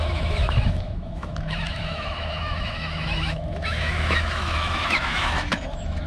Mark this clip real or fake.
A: fake